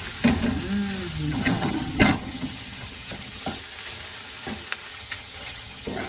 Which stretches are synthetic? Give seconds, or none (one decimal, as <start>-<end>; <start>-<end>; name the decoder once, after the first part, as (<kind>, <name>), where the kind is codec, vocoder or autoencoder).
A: 1.1-3.6 (vocoder, HiFi-GAN); 4.9-6.1